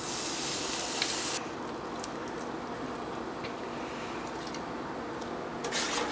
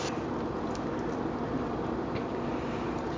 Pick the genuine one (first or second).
first